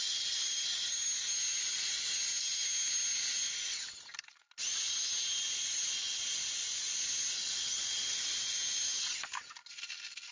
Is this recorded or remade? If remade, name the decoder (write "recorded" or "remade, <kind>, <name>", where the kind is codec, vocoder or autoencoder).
recorded